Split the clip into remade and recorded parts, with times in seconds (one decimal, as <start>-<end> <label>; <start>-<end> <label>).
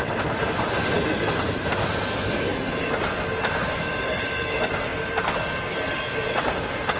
0.0-4.9 recorded; 4.9-7.0 remade